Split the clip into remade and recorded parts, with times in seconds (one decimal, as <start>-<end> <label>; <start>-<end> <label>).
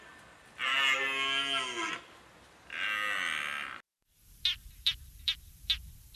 0.0-0.7 remade; 0.7-4.4 recorded; 4.4-6.2 remade